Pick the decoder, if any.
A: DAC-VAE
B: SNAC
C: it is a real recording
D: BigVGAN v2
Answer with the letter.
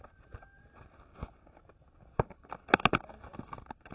C